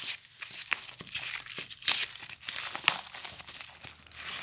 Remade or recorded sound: recorded